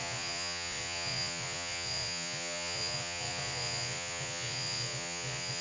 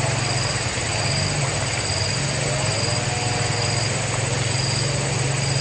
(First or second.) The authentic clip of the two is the second